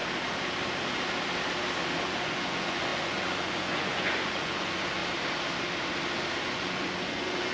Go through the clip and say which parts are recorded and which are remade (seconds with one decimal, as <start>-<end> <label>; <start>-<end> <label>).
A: 0.0-2.0 recorded; 2.0-5.0 remade; 5.0-6.4 recorded; 6.4-7.5 remade